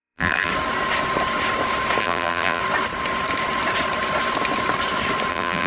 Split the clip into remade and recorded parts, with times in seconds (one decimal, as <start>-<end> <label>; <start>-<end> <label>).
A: 0.0-0.5 remade; 0.5-2.0 recorded; 2.0-2.6 remade; 2.6-5.3 recorded; 5.3-5.7 remade